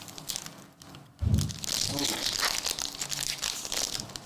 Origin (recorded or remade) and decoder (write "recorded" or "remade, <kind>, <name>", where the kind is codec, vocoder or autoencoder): recorded